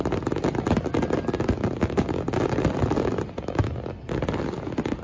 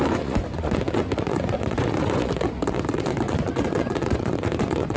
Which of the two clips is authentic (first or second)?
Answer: first